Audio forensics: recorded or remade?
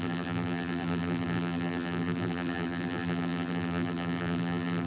remade